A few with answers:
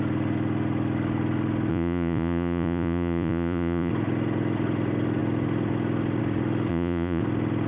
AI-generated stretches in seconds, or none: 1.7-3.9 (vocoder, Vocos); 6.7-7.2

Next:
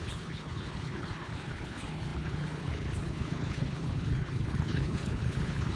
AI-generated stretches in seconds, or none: 0.0-5.8 (codec, HILCodec)

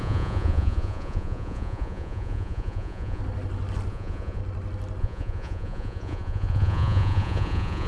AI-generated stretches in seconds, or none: 0.0-3.2 (vocoder, Vocos); 3.9-4.4; 5.0-7.9

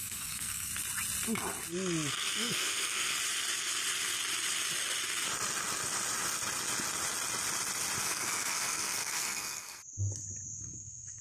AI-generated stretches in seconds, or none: 0.0-0.7 (codec, SNAC); 2.1-3.1; 8.0-9.8; 10.6-11.2

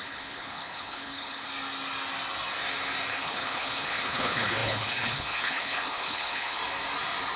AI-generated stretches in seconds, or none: 0.0-1.5 (codec, HILCodec); 3.1-6.6

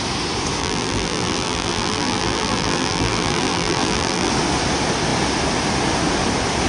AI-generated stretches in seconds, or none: 0.6-4.3 (vocoder, BigVGAN v2)

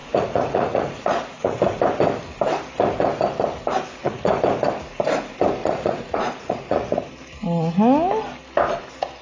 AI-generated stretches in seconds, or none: 0.0-1.6 (vocoder, Vocos); 3.9-4.4; 5.6-7.1